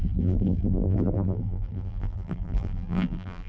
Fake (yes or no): yes